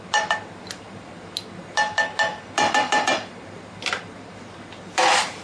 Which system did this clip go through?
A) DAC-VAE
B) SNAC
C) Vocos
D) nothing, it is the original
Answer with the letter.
D